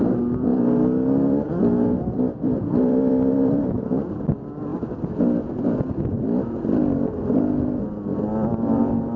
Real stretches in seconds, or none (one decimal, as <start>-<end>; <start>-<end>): 0.0-0.5; 3.7-9.2